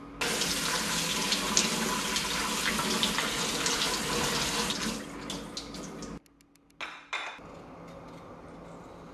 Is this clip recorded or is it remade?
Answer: recorded